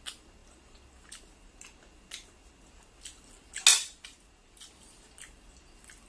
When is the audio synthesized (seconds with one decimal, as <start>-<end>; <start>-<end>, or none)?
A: 3.7-4.7